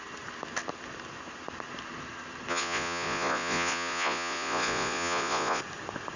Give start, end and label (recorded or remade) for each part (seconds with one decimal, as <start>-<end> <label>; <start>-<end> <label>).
0.0-2.5 recorded; 2.5-5.6 remade; 5.6-6.2 recorded